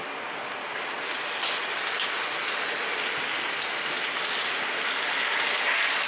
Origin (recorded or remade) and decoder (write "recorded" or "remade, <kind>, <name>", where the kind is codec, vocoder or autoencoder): recorded